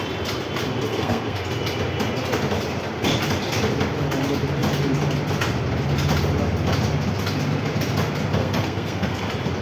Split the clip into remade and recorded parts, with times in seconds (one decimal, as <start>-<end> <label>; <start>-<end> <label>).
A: 0.0-0.9 recorded; 0.9-1.5 remade; 1.5-8.4 recorded; 8.4-9.2 remade; 9.2-9.6 recorded